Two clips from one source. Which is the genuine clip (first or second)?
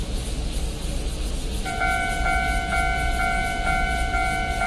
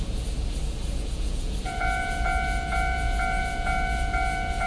first